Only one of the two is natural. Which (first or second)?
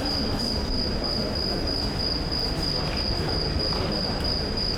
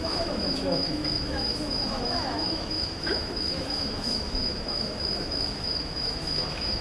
first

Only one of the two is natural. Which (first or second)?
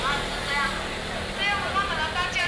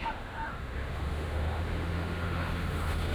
first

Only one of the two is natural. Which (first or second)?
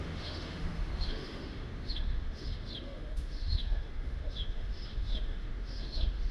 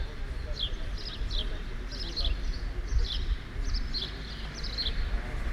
second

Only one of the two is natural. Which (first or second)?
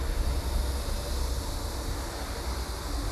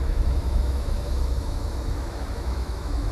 first